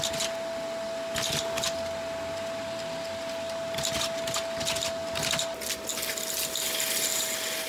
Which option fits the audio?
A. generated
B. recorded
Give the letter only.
B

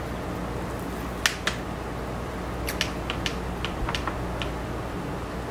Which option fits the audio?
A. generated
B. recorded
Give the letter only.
B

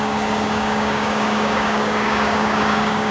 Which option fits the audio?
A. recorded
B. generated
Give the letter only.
B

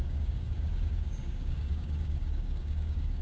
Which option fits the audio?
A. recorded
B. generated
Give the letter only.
B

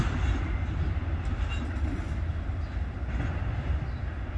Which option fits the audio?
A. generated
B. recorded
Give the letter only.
B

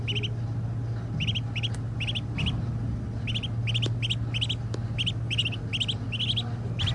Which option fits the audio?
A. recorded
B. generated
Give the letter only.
A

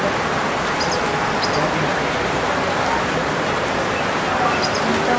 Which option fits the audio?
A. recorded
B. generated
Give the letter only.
A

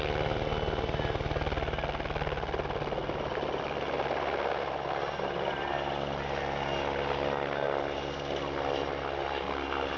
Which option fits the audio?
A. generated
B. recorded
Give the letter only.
B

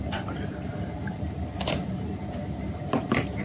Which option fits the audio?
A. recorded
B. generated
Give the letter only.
A